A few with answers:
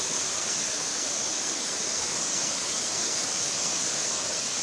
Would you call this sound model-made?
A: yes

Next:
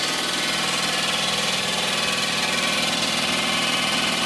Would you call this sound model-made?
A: yes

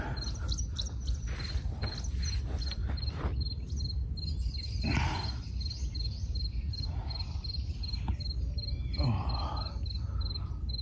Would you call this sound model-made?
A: no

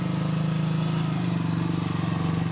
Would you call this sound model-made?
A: no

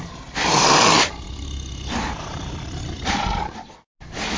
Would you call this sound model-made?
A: no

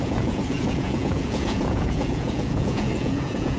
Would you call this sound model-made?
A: yes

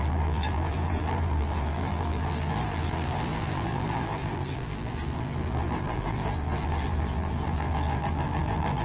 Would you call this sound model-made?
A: yes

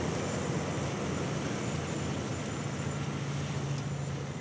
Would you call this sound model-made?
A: no